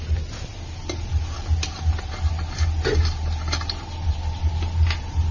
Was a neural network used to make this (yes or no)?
no